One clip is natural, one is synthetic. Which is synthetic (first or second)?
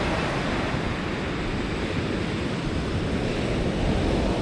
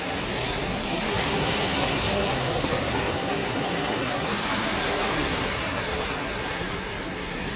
second